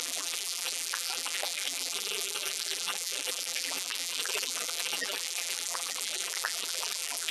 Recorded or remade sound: remade